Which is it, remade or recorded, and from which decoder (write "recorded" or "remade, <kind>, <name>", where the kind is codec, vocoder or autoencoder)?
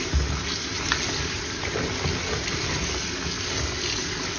recorded